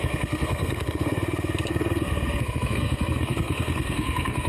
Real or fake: fake